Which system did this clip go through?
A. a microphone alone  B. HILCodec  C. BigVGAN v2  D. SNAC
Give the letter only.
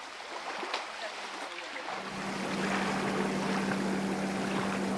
A